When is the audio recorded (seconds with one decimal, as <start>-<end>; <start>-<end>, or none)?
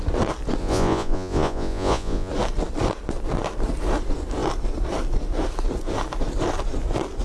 0.0-0.6; 2.3-7.2